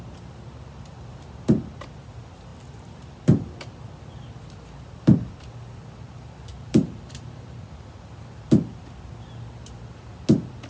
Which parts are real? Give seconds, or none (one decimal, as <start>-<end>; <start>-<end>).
0.0-6.5; 8.1-10.7